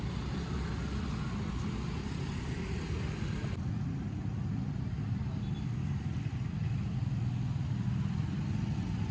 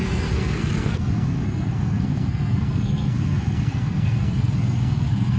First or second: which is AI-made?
second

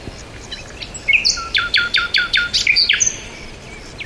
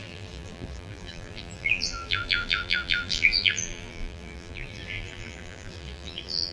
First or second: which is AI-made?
second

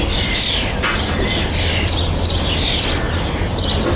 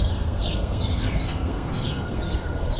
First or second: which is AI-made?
second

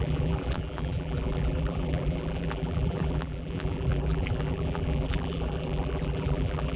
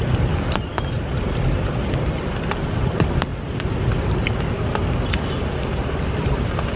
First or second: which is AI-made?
first